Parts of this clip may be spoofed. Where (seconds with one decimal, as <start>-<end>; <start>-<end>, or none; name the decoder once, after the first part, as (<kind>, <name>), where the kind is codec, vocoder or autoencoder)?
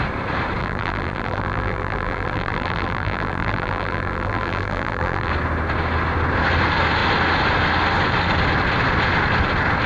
0.6-5.3 (vocoder, BigVGAN v2)